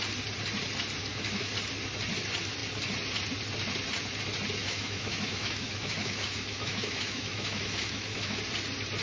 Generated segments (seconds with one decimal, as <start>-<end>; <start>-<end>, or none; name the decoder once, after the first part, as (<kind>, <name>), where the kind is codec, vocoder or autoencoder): 1.0-1.5 (autoencoder, DAC-VAE); 4.6-8.4